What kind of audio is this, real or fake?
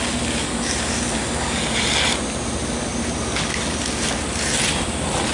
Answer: real